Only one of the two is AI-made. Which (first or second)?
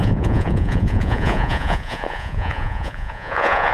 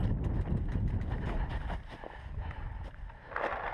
first